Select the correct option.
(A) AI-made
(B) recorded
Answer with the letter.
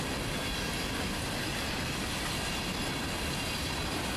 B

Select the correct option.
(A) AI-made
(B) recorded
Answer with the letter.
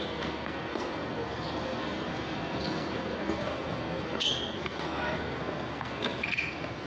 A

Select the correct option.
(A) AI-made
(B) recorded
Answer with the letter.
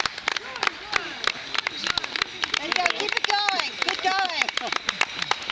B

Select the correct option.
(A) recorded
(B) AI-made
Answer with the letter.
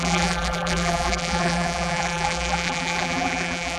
B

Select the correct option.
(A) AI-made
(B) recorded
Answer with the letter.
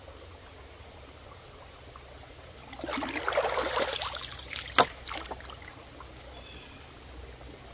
B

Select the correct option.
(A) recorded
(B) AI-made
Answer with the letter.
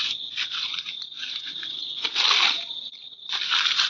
A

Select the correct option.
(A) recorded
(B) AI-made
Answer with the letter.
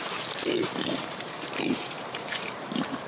B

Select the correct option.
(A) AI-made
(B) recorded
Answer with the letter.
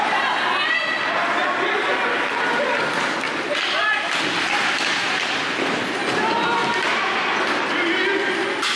B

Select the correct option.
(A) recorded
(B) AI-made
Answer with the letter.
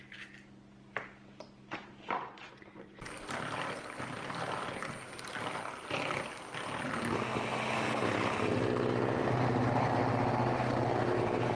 A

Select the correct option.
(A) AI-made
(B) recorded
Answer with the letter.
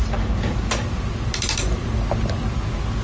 B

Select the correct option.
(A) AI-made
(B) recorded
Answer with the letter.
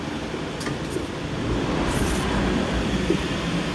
A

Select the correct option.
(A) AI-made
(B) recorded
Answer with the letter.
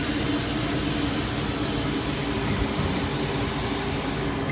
B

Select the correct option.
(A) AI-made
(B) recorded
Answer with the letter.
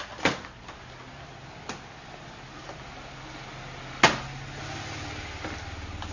B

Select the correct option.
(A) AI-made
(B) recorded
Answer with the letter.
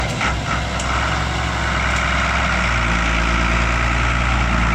B